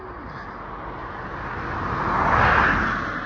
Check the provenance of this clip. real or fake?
real